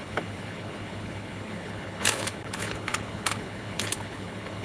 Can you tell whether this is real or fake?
fake